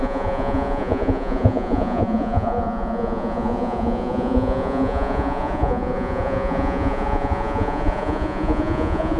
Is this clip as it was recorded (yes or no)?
no